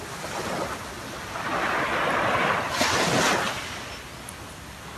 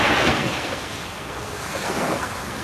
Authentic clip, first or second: first